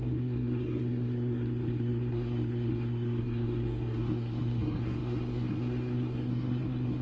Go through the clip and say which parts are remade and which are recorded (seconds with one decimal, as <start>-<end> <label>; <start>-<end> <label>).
0.0-7.0 remade